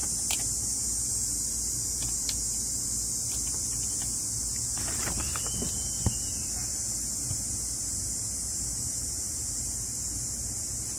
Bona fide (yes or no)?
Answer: yes